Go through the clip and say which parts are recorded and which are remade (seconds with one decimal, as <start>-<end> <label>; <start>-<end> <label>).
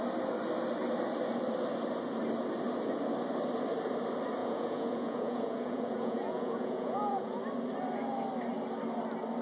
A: 0.0-4.4 recorded; 4.4-7.4 remade; 7.4-9.4 recorded